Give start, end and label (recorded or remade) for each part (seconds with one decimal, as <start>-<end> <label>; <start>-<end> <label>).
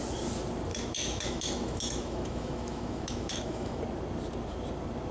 0.0-0.7 recorded; 0.7-3.8 remade; 3.8-5.1 recorded